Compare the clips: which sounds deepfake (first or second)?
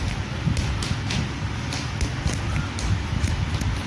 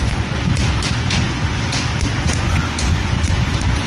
second